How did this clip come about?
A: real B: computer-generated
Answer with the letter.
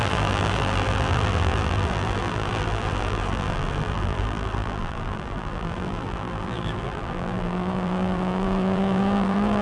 B